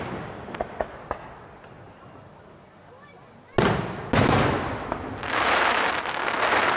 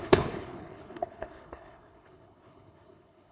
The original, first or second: first